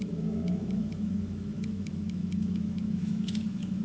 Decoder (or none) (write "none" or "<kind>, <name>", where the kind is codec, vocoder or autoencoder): autoencoder, DAC-VAE